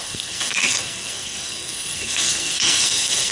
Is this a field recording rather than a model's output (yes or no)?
no